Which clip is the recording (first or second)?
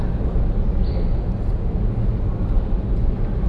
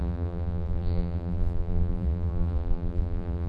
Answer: first